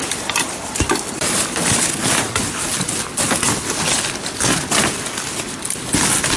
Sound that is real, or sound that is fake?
real